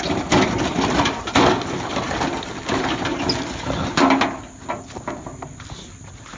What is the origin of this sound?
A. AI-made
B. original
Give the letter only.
B